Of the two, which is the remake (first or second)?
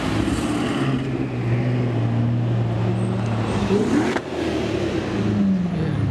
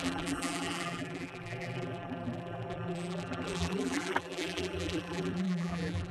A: second